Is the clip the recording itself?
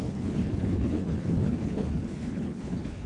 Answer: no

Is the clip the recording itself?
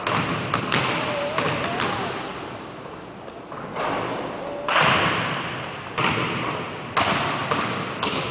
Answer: yes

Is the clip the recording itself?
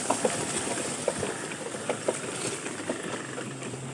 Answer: yes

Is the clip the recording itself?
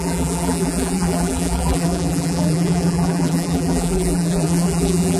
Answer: no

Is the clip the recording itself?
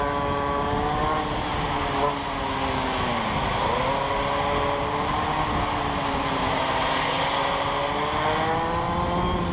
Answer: yes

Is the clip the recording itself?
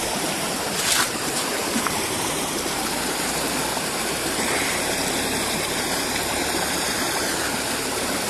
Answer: no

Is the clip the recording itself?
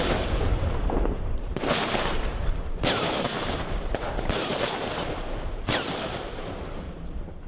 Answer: no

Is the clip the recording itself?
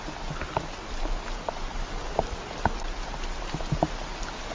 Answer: yes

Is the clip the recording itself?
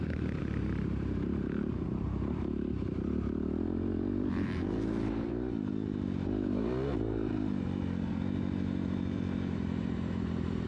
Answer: no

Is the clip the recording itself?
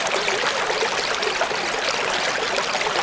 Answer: yes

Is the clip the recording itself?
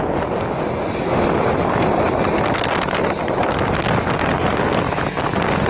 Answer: yes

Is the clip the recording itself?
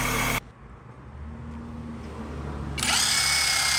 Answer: yes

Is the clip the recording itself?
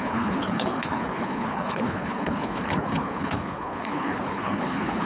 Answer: no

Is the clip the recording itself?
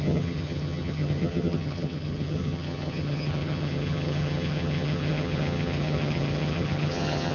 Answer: no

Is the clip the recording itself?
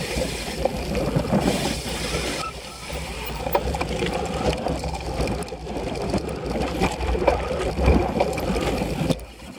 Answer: yes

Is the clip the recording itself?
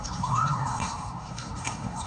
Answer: no